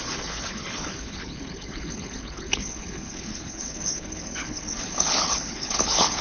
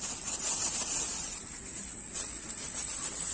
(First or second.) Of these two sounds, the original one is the second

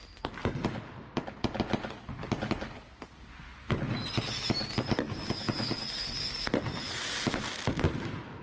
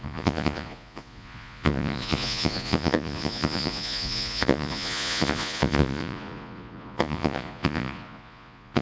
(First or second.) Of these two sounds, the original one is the first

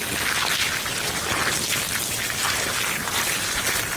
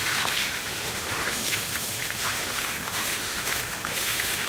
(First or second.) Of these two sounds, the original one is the first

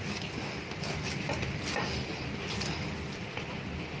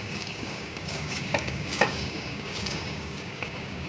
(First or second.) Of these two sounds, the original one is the first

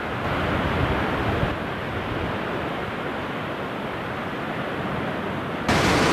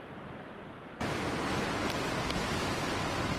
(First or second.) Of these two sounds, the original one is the first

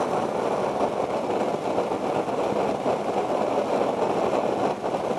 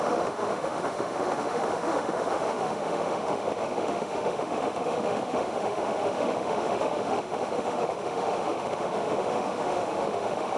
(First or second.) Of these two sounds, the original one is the first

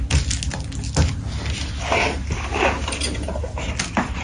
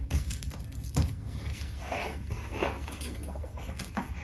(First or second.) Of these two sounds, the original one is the first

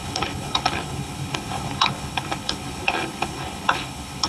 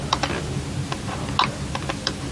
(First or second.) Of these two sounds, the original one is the second